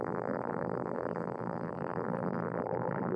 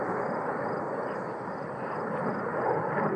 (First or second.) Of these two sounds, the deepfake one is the first